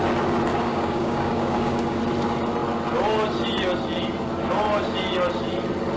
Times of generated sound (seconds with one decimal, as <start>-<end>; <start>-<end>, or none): 0.5-2.0